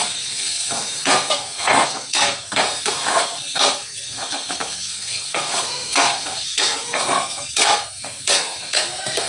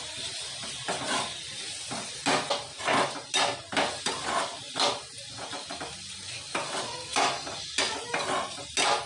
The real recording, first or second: second